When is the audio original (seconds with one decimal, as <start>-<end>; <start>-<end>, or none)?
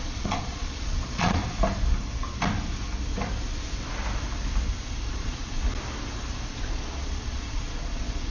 1.4-5.1; 5.7-6.5